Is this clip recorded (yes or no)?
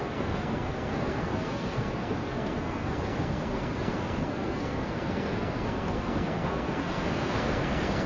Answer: no